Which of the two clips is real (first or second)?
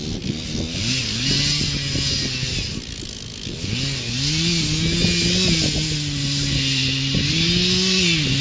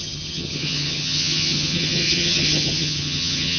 first